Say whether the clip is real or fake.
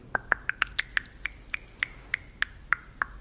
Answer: real